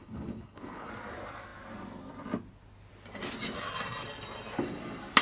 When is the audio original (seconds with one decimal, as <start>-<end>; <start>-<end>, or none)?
0.9-5.2